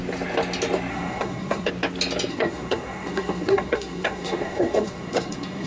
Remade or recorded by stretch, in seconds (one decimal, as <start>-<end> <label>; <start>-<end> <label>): 0.0-0.9 recorded; 0.9-1.7 remade; 1.7-2.3 recorded; 2.3-5.7 remade